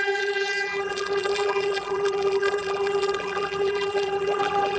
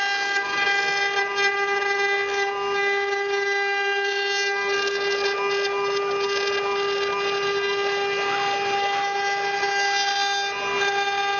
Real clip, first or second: second